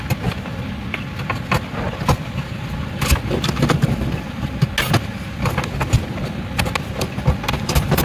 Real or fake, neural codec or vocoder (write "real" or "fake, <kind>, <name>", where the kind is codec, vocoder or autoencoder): real